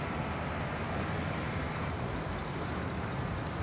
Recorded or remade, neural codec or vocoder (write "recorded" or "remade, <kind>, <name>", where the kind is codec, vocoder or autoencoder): recorded